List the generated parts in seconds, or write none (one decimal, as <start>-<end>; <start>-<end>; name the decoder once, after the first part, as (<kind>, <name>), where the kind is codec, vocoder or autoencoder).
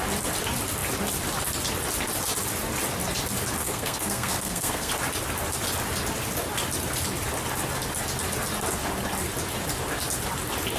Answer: 3.6-4.9 (codec, SNAC)